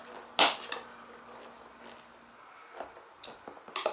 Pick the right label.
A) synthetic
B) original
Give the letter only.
B